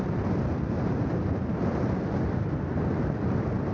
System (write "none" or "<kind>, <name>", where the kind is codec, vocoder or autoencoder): none